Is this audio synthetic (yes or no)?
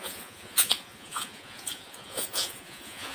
yes